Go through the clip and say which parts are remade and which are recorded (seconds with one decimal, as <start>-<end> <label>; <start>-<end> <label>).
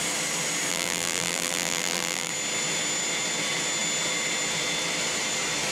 0.0-0.7 recorded; 0.7-2.3 remade; 2.3-5.7 recorded